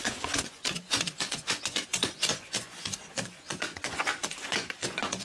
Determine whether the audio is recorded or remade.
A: remade